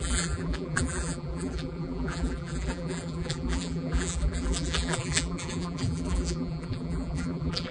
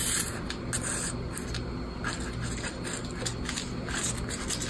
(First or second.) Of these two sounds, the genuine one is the second